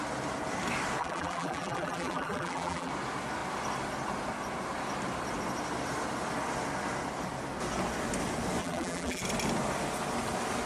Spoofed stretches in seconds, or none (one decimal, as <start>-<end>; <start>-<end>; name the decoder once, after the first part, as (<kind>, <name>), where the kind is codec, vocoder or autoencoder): 1.0-2.9 (vocoder, BigVGAN v2); 8.6-9.2